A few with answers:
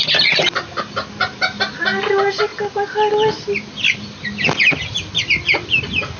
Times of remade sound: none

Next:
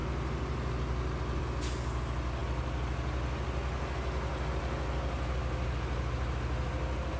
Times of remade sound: none

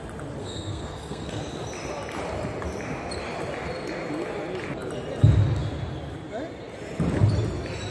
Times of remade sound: 0.4-1.4 (codec, SNAC)